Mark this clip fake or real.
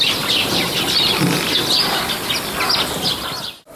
real